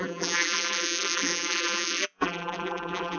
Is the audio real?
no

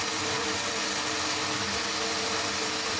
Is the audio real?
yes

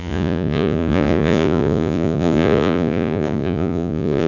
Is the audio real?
no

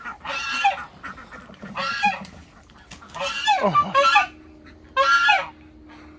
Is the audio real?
yes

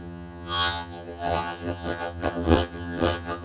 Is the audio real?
no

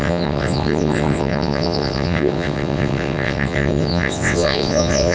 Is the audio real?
no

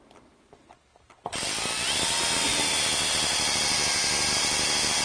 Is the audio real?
yes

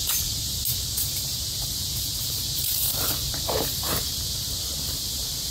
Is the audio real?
no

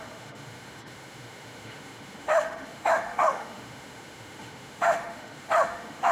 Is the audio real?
no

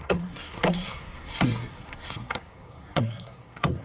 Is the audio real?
no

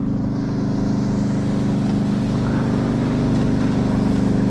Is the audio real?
yes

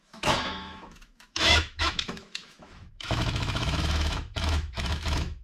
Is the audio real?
no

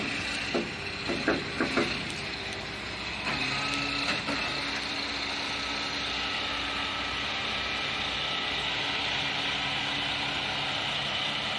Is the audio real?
yes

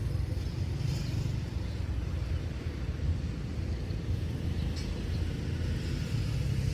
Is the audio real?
yes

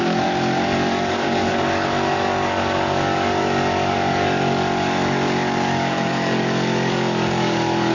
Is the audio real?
no